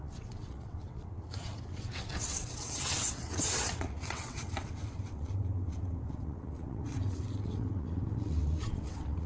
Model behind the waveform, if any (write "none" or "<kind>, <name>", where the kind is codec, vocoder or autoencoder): vocoder, WaveNeXt